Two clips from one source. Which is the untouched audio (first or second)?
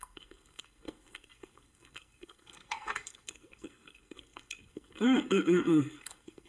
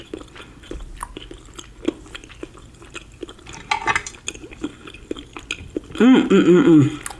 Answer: second